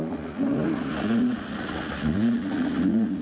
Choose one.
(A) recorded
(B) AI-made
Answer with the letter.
B